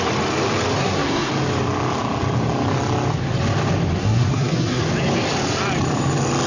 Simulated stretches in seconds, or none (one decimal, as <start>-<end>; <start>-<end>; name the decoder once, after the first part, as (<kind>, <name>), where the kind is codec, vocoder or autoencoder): 0.8-1.3 (codec, SNAC); 4.0-4.8